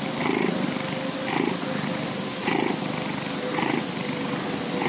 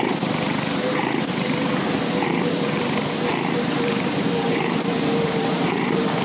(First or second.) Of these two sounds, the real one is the first